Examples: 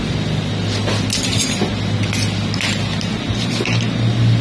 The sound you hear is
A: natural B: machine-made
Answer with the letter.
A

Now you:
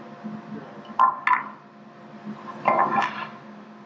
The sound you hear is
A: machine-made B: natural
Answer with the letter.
B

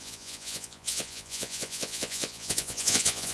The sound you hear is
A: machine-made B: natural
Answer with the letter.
A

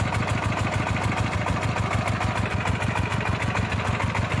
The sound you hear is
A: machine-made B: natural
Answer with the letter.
B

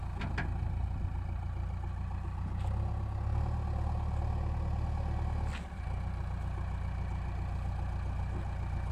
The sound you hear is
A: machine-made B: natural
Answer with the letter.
B